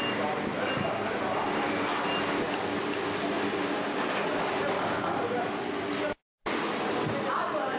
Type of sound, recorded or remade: recorded